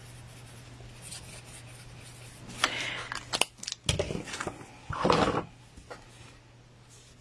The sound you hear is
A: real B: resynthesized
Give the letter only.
A